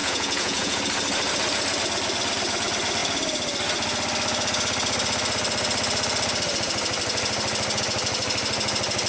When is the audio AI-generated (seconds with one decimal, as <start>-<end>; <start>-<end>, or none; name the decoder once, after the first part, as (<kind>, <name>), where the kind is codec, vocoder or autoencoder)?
0.0-0.8 (vocoder, Vocos)